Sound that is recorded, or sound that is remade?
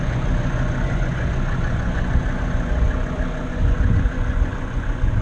remade